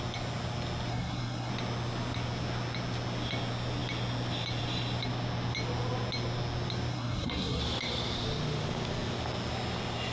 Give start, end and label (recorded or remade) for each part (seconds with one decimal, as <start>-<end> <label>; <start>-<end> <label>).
0.0-0.9 recorded; 0.9-1.5 remade; 1.5-6.9 recorded; 6.9-7.6 remade; 7.6-10.1 recorded